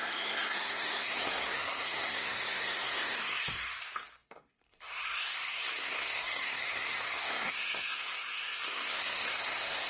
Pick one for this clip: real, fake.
fake